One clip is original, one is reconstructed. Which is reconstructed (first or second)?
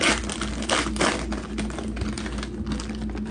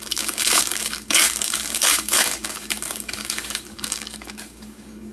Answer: second